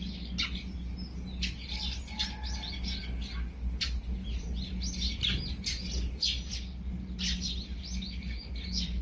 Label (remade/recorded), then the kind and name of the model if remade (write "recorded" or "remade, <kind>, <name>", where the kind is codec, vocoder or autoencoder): recorded